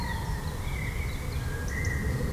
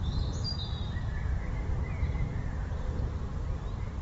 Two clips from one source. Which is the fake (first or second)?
second